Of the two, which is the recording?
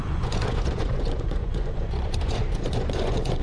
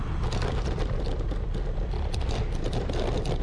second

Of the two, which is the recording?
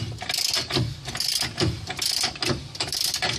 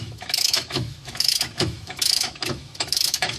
first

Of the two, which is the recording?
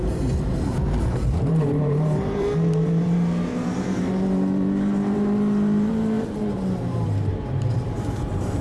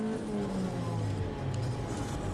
second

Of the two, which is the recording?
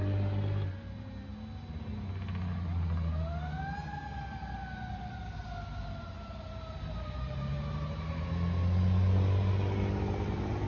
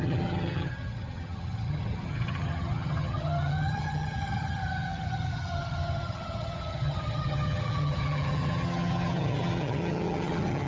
first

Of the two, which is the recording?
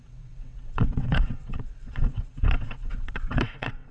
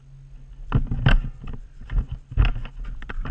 second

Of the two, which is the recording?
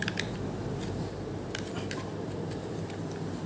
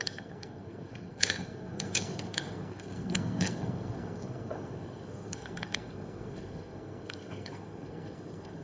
first